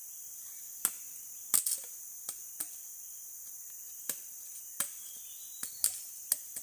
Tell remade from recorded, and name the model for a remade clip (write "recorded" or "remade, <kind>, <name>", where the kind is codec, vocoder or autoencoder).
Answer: recorded